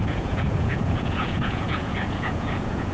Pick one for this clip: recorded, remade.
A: remade